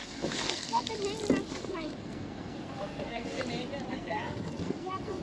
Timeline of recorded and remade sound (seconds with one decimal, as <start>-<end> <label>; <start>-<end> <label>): 0.0-0.9 remade; 0.9-1.5 recorded; 1.5-3.4 remade; 3.4-3.9 recorded; 3.9-5.2 remade